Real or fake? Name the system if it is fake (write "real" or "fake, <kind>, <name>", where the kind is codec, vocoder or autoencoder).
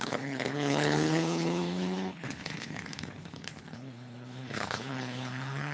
fake, codec, HILCodec